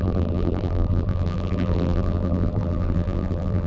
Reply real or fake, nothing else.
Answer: fake